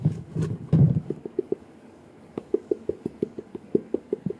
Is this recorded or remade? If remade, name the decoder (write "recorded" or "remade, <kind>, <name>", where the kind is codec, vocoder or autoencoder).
remade, codec, DAC